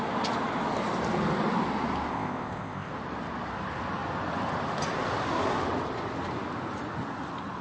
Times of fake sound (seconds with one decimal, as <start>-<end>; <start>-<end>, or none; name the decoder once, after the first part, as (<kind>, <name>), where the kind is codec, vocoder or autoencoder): 2.1-2.9 (codec, ZipCodec)